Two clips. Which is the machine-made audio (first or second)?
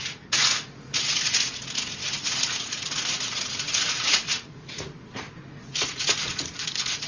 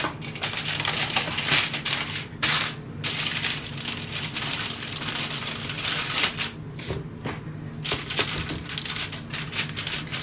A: first